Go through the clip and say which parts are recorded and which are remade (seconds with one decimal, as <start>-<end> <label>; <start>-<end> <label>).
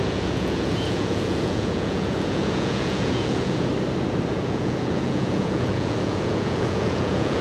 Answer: 0.0-3.7 remade; 3.7-4.3 recorded; 4.3-7.4 remade